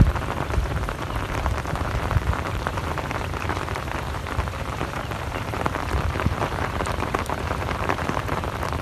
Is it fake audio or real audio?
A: fake